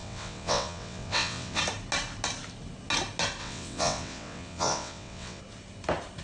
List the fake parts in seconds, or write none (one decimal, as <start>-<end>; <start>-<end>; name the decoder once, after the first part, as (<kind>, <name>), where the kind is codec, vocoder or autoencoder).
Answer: 0.0-1.6 (vocoder, WaveNeXt); 3.4-5.4